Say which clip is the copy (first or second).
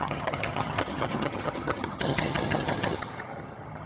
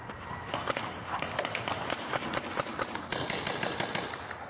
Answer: first